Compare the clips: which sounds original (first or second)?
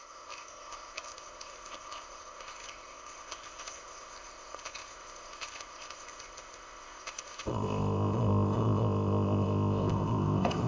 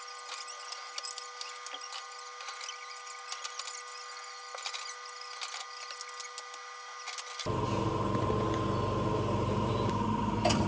second